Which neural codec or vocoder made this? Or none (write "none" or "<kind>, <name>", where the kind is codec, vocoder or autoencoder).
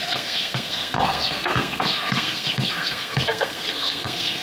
codec, SNAC